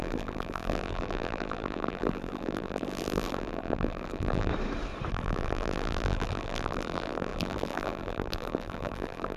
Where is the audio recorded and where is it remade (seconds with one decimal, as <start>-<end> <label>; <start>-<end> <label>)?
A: 0.0-4.5 remade; 4.5-5.1 recorded; 5.1-9.4 remade